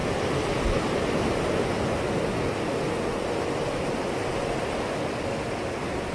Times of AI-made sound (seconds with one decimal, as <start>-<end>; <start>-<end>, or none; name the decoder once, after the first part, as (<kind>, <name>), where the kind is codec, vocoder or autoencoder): none